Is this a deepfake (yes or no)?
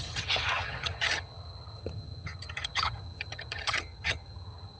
yes